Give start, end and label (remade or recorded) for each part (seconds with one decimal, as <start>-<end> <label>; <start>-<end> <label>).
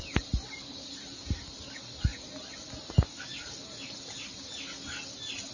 0.0-5.5 recorded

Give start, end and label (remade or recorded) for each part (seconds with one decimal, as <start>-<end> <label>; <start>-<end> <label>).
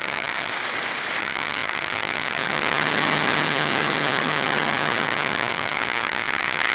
0.0-0.5 remade; 0.5-1.2 recorded; 1.2-6.7 remade